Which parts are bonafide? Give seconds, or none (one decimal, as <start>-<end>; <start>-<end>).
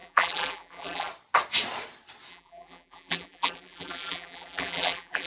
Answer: 1.1-2.3